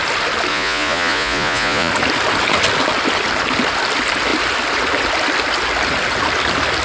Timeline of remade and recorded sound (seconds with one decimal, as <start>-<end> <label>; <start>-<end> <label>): 0.0-0.5 recorded; 0.5-1.9 remade; 1.9-6.8 recorded